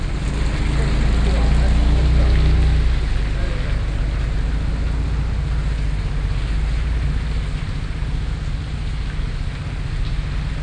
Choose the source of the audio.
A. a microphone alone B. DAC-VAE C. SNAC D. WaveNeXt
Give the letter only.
A